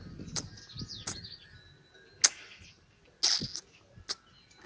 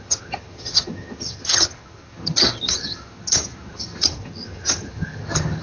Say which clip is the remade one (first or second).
second